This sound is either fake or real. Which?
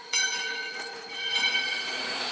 fake